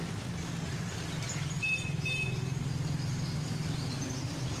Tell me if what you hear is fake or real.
real